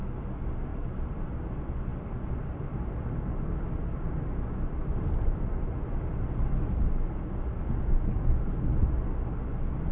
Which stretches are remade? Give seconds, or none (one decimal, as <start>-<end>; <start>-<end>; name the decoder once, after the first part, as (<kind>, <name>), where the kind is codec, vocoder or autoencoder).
0.7-1.3 (vocoder, BigVGAN v2); 1.9-6.5